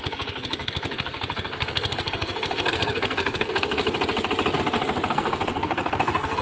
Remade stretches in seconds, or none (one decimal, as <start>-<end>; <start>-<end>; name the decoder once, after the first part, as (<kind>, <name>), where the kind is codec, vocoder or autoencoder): 0.0-3.8 (codec, SNAC); 5.1-6.4